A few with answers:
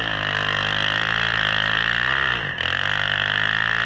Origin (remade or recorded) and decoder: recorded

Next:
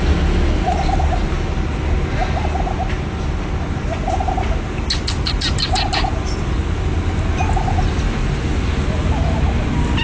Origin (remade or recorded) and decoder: recorded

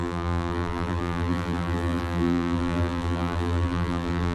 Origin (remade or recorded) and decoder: remade, vocoder, BigVGAN v2